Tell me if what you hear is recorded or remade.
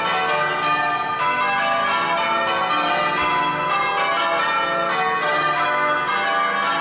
recorded